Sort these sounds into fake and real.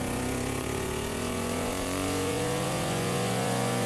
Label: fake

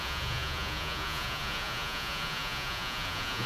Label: fake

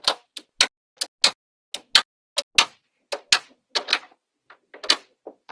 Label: real